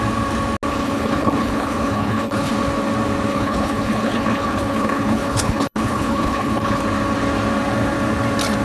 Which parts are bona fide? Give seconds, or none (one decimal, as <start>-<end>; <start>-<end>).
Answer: 0.0-0.7; 2.5-3.3; 6.8-8.6